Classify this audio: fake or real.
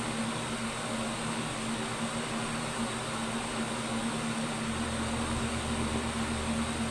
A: real